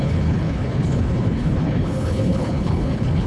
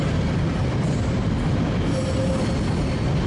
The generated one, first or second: first